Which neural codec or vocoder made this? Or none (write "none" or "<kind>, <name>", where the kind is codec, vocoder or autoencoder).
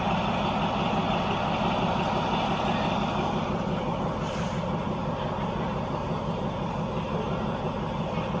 none